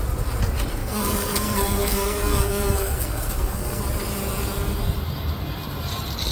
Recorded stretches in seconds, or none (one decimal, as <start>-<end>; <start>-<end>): 0.0-0.8; 3.8-6.3